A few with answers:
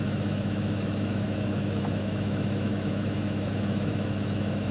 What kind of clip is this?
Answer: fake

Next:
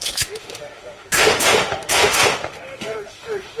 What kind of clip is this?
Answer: fake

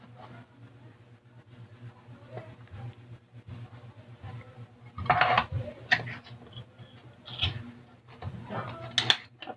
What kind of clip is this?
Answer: real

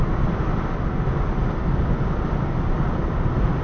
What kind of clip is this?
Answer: real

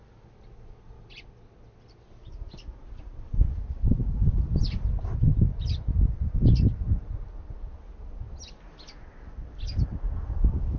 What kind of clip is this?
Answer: real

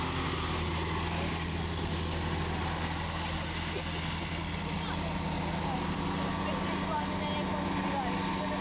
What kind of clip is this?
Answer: real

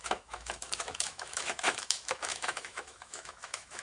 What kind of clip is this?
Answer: fake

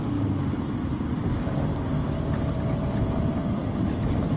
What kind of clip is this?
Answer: real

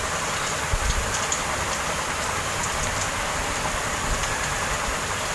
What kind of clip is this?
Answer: real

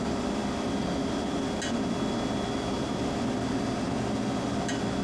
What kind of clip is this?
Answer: real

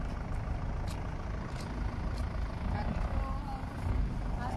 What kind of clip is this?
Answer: real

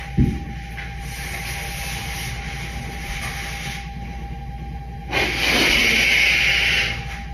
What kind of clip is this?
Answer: real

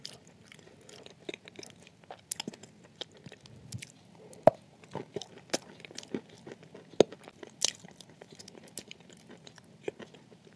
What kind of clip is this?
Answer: real